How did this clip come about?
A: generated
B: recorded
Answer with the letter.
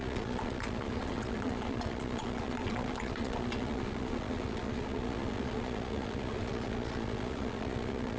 A